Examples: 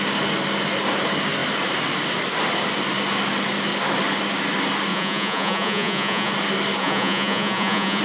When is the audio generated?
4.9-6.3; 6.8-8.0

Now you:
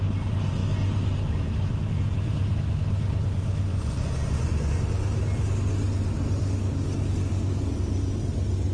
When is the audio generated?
3.7-4.8

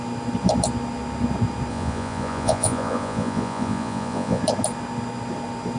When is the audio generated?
1.7-4.4

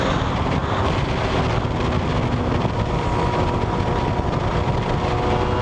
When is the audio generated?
none

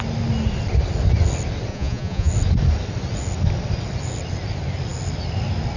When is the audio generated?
1.7-2.3